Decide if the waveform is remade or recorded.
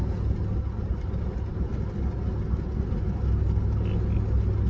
recorded